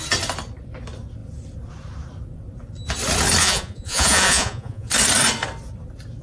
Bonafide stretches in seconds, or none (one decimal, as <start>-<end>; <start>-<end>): 0.0-3.4; 4.9-6.2